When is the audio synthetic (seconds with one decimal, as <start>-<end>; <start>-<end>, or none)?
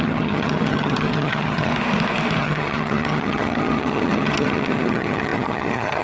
0.0-1.7; 2.4-6.0